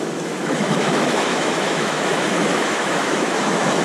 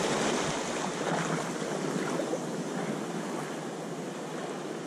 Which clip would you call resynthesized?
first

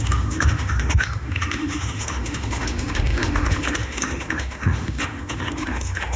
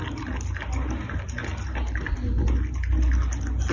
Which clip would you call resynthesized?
first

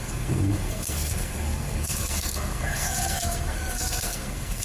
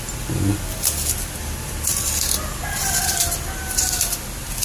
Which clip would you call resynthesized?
first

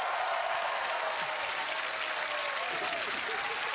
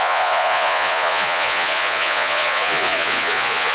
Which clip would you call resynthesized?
second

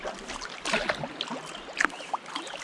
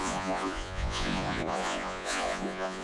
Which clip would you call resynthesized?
second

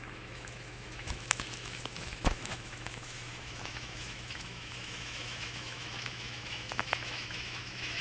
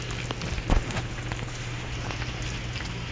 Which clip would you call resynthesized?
first